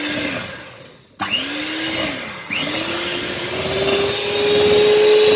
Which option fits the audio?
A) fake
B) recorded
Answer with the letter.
B